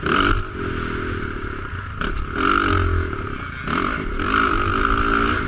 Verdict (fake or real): real